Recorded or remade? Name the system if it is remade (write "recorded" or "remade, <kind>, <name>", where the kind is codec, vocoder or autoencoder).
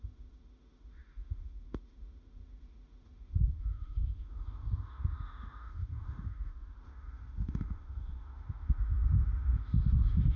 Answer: remade, autoencoder, DAC-VAE